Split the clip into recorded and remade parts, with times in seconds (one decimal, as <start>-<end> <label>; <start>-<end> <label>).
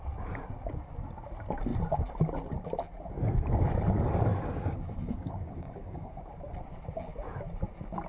0.0-4.3 recorded; 4.3-6.2 remade; 6.2-8.1 recorded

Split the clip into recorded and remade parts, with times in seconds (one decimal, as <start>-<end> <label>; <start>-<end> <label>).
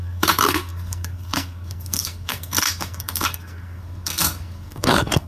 0.0-5.3 remade